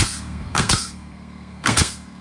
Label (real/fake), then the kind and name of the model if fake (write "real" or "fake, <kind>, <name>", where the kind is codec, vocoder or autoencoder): fake, codec, SNAC